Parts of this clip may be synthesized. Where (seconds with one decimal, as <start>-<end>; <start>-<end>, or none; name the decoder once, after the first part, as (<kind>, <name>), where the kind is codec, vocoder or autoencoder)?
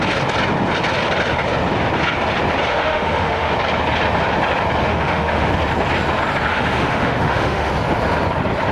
2.7-3.5 (autoencoder, DAC-VAE); 4.9-5.5; 6.5-7.7